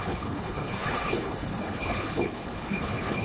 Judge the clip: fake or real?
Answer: fake